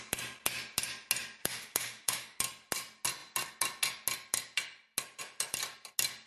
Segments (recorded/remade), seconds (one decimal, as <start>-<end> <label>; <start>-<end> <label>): 0.0-1.4 recorded; 1.4-2.4 remade; 2.4-6.3 recorded